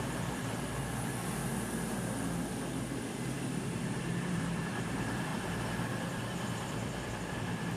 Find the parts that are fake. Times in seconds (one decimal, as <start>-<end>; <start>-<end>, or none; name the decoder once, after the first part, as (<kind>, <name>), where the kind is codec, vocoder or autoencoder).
0.0-0.4 (vocoder, BigVGAN v2); 4.0-5.3; 6.2-7.8